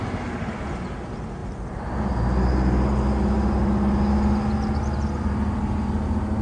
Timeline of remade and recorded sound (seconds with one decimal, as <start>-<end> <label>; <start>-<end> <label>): 0.0-6.4 recorded